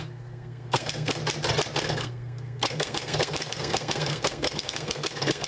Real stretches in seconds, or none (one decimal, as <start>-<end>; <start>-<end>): 1.2-1.8